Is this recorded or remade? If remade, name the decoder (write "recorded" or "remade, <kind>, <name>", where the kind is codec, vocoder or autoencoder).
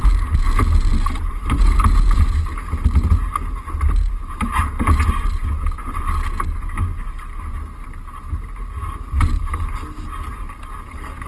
recorded